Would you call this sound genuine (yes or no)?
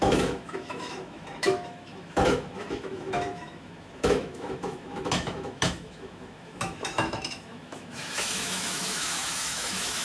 no